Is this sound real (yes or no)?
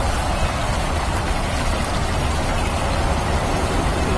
yes